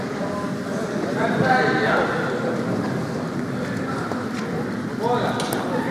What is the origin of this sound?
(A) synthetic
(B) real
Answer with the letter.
B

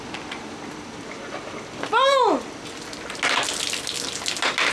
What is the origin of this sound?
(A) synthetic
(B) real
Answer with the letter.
B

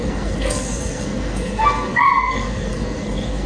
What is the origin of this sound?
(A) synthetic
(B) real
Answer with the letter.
A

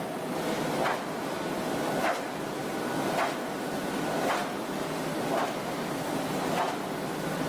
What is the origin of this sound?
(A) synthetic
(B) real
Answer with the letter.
B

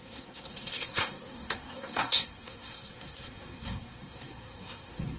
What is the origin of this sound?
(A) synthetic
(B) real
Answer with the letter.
A